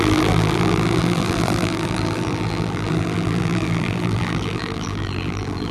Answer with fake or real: fake